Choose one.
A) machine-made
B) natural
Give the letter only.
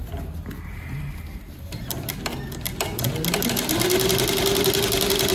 B